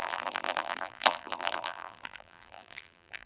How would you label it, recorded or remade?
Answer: remade